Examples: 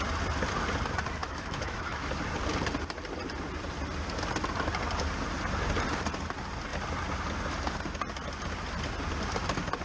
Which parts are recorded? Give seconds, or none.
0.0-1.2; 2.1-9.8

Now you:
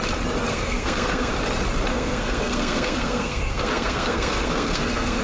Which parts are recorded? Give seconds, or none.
0.0-0.5; 1.3-1.9